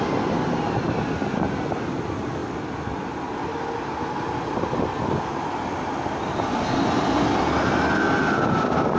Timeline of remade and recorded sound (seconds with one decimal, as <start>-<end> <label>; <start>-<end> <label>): 0.0-9.0 recorded